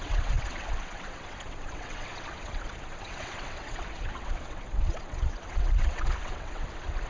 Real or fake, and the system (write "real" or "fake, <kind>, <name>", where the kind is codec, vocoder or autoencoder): fake, vocoder, WaveNeXt